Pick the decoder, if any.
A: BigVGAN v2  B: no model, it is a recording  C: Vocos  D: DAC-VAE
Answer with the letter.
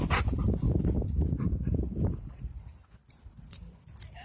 B